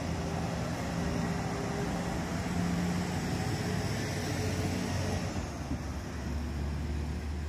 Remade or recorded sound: recorded